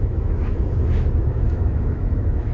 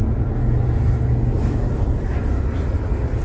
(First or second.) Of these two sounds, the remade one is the first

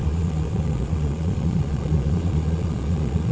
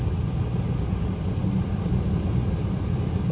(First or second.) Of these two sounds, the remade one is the first